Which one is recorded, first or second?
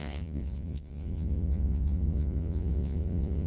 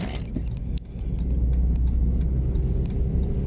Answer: second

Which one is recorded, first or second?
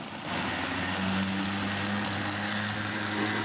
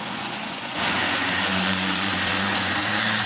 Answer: first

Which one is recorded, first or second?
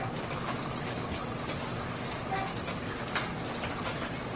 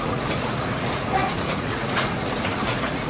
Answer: first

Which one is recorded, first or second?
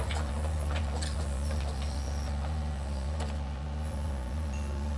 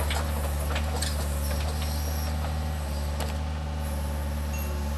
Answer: second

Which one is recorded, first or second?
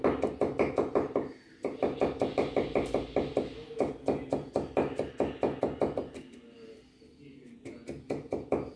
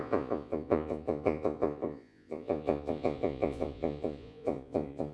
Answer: first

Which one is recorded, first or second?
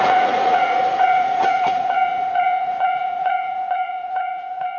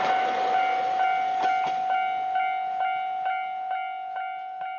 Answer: second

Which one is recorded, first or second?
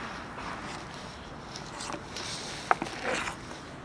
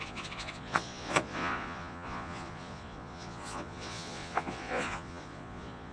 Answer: first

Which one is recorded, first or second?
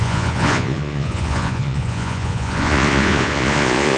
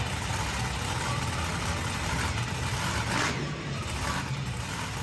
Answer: second